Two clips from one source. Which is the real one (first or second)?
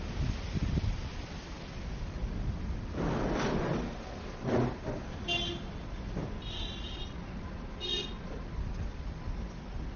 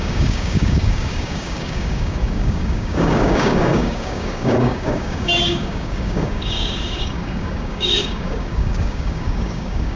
first